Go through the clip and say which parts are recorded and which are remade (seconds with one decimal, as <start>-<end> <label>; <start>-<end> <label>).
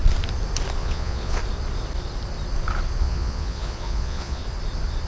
0.0-0.8 recorded; 0.8-1.4 remade; 1.4-3.0 recorded; 3.0-4.4 remade; 4.4-5.1 recorded